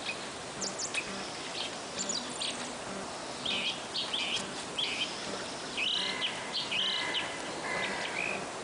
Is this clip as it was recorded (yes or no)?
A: yes